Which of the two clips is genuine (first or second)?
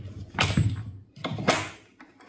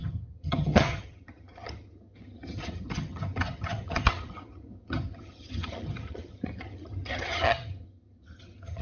first